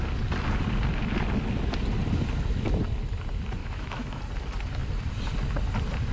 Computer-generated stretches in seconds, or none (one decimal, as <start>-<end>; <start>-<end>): 3.6-4.2